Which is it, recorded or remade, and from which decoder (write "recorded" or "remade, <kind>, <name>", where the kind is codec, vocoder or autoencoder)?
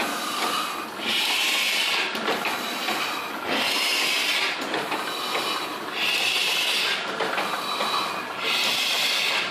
recorded